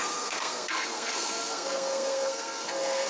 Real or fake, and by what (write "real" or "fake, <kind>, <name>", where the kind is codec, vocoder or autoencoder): fake, codec, SNAC